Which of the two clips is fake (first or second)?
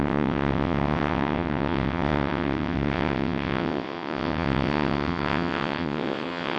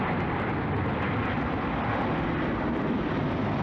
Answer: first